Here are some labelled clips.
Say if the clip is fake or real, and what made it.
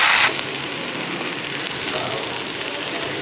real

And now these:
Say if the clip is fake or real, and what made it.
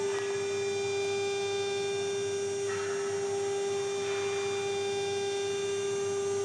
real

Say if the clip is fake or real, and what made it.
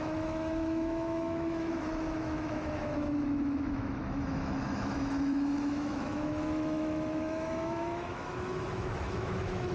fake, autoencoder, DAC-VAE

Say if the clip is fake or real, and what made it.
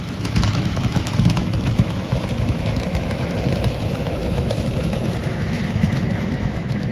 fake, autoencoder, DAC-VAE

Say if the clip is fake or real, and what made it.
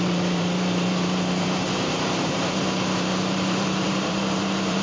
fake, vocoder, BigVGAN v2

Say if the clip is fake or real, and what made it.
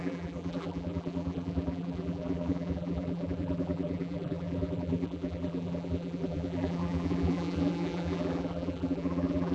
fake, vocoder, BigVGAN v2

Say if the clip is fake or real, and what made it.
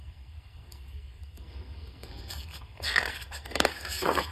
fake, codec, SNAC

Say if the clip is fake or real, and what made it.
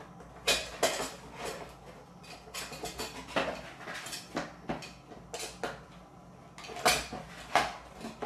real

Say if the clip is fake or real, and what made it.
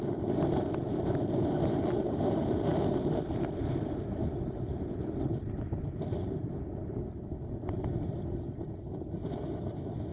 real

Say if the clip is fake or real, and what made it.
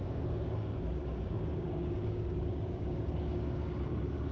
fake, codec, DAC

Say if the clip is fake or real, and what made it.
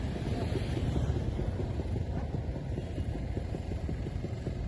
fake, vocoder, BigVGAN v2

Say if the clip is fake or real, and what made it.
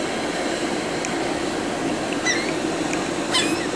real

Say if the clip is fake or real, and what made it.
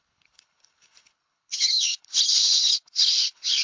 fake, codec, HILCodec